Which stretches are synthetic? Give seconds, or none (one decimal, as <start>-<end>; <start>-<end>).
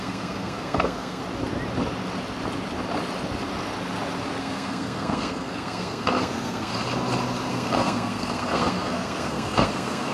0.0-1.2; 4.4-6.7; 7.5-10.1